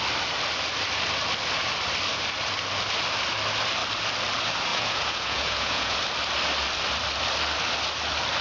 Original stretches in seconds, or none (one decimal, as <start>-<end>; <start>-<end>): 0.0-4.7; 6.0-8.4